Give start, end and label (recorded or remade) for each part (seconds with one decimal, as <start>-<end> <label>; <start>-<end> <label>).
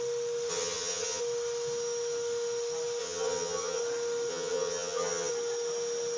0.0-0.5 recorded; 0.5-1.2 remade; 1.2-3.0 recorded; 3.0-3.8 remade; 3.8-4.3 recorded; 4.3-5.3 remade; 5.3-6.2 recorded